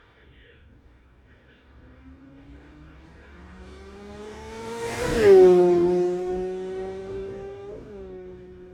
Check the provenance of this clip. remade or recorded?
remade